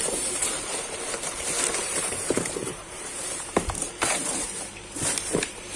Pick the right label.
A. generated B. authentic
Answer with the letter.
A